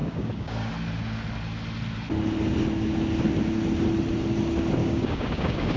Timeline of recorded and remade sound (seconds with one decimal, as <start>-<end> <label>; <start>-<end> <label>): 0.0-0.7 remade; 0.7-4.8 recorded; 4.8-5.8 remade